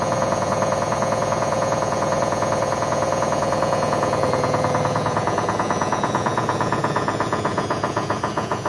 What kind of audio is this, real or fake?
fake